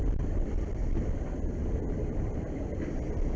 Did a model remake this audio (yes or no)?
yes